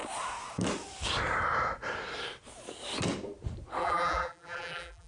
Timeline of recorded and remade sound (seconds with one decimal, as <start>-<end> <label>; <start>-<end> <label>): 0.0-3.8 recorded; 3.8-5.1 remade